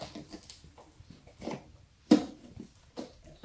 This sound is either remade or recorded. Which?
recorded